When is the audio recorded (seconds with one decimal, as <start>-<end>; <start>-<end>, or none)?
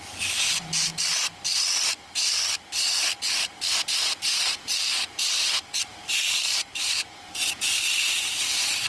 0.9-3.9